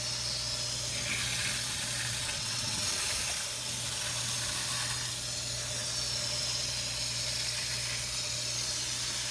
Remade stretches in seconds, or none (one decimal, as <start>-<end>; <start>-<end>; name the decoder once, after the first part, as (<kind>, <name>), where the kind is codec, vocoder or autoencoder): 2.2-2.9 (vocoder, WaveNeXt)